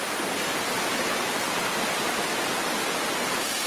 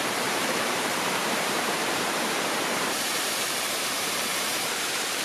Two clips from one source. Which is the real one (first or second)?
first